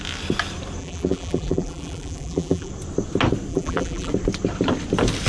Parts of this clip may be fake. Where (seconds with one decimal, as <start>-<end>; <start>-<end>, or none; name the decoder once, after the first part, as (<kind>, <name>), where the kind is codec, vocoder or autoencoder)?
0.8-2.7 (vocoder, BigVGAN v2); 3.5-4.1